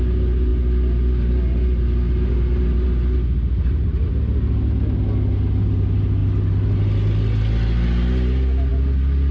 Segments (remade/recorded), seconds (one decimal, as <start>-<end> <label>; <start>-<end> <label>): 0.0-9.3 recorded